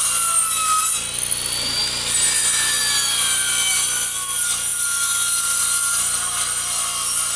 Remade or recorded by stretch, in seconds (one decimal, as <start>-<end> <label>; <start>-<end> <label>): 0.0-7.4 recorded